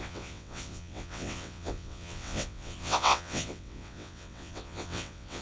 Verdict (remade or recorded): remade